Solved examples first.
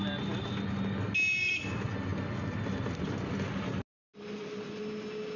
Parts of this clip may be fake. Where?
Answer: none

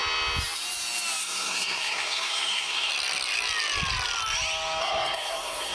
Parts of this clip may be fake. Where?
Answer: 1.2-2.9 (codec, SNAC); 4.8-5.7

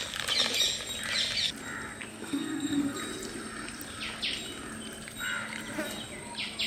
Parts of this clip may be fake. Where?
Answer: 2.1-3.0 (codec, SNAC)

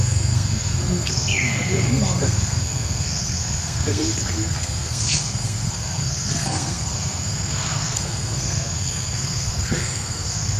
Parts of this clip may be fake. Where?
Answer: 0.0-10.6 (codec, SNAC)

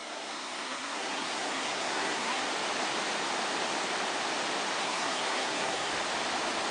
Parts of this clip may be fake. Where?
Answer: 0.0-2.4 (codec, SNAC); 4.8-5.9

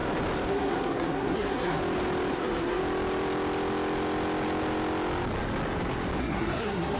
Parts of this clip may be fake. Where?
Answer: 0.5-1.8 (codec, SNAC); 2.3-2.8; 6.2-7.0